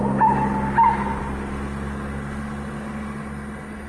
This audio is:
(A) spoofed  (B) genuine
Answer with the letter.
B